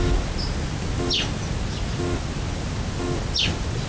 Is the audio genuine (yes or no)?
yes